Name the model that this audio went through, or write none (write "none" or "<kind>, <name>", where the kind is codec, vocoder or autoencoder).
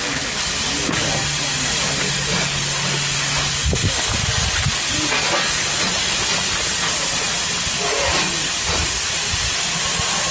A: none